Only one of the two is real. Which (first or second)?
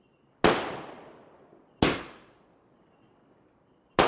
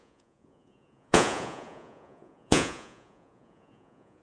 first